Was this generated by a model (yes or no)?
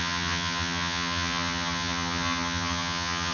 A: yes